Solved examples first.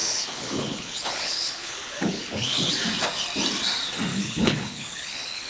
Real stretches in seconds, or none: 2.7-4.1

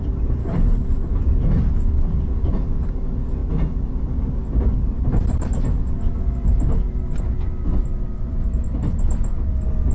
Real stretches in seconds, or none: 0.0-0.4; 1.1-9.9

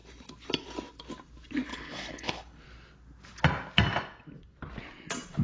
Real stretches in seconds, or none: 0.0-1.7; 2.6-5.4